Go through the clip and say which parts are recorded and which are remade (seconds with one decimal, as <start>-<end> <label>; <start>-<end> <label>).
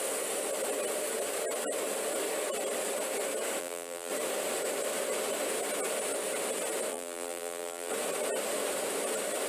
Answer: 0.0-3.6 recorded; 3.6-4.1 remade; 4.1-6.9 recorded; 6.9-7.9 remade; 7.9-9.5 recorded